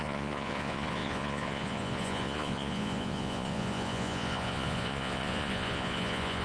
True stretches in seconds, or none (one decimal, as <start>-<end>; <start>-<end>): none